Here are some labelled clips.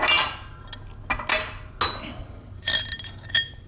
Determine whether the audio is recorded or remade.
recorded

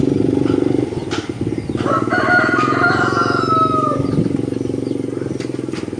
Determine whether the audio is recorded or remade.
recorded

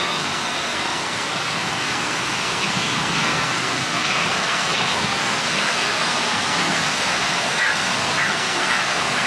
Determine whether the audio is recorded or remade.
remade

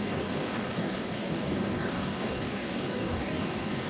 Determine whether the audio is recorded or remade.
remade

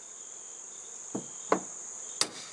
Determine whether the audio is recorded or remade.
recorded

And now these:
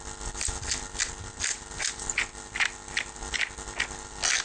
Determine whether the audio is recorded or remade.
recorded